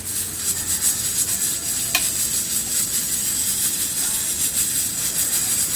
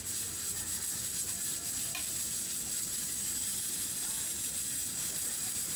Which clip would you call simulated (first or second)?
second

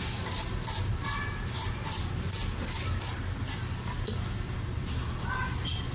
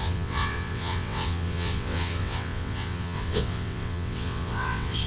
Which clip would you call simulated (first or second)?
second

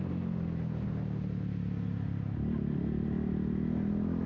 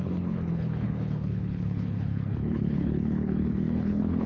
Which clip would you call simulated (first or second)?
second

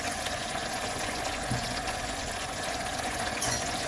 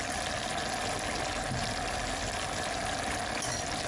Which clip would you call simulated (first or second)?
first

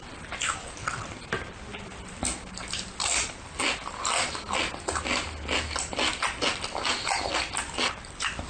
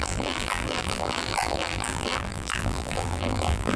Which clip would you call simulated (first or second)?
second